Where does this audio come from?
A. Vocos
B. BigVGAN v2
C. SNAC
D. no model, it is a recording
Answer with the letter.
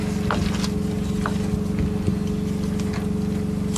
D